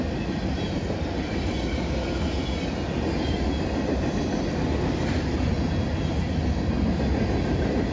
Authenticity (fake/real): real